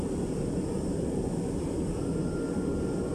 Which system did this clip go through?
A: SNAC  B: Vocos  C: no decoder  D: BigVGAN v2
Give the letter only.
C